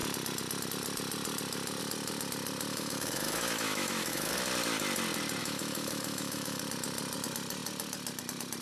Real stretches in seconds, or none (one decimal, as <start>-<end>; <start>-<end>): 0.0-2.7; 4.3-5.4; 6.6-8.6